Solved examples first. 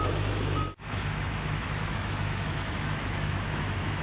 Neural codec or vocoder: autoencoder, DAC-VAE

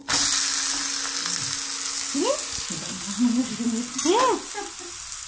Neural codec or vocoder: none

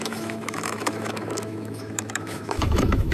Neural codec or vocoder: autoencoder, DAC-VAE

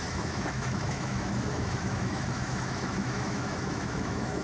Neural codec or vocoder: autoencoder, DAC-VAE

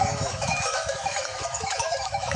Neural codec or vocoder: autoencoder, DAC-VAE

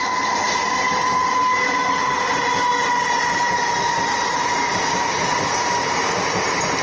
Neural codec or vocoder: none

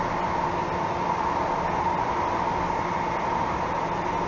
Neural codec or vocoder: none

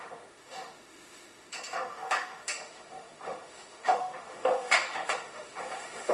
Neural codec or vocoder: autoencoder, DAC-VAE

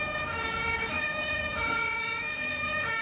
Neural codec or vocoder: autoencoder, DAC-VAE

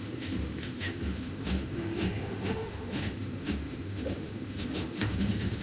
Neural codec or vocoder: autoencoder, DAC-VAE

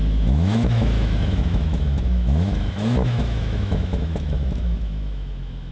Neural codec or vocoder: autoencoder, DAC-VAE